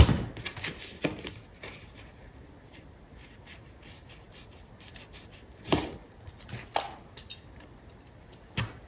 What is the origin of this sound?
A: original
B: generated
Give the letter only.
A